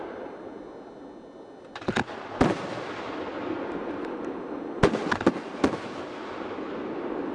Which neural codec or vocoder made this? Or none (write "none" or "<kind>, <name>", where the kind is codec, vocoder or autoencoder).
none